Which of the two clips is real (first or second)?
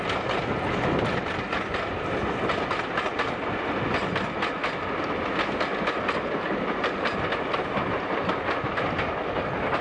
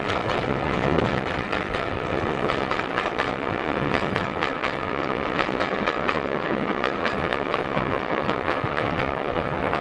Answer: first